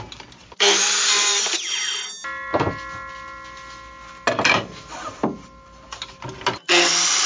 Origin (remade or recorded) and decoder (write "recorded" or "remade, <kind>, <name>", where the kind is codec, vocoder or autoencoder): recorded